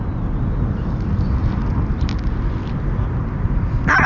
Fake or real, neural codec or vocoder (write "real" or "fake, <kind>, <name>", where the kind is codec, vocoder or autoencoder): real